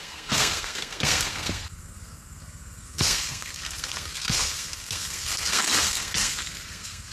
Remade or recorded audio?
remade